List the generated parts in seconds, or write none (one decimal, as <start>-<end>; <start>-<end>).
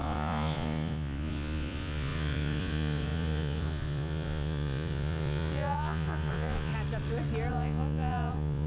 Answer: 0.0-6.7; 7.5-8.7